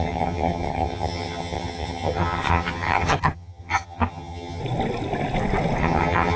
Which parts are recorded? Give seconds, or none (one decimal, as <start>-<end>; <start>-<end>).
4.6-5.8